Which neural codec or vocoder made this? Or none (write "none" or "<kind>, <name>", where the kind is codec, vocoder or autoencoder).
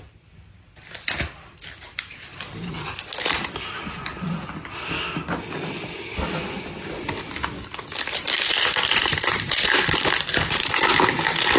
none